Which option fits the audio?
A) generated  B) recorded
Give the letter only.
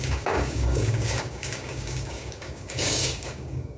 A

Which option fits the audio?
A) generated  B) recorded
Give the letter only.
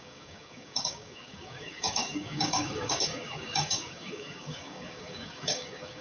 A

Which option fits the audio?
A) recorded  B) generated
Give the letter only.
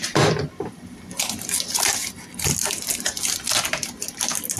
A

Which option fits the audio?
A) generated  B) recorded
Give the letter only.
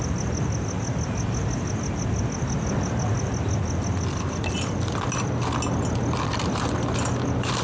B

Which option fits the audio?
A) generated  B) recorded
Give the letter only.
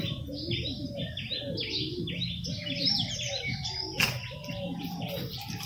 B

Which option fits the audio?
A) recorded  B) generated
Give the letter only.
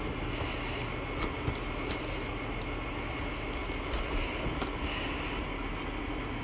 A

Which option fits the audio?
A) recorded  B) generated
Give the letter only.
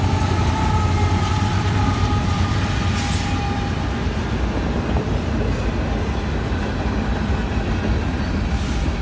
A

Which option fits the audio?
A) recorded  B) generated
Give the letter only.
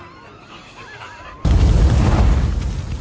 A